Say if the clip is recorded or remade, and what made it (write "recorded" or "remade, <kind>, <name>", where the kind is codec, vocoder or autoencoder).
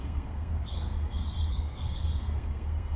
remade, codec, SNAC